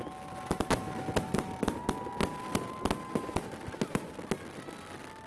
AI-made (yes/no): no